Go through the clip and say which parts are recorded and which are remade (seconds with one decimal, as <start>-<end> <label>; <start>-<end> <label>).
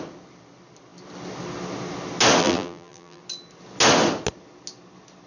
0.0-2.4 recorded; 2.4-3.2 remade; 3.2-5.3 recorded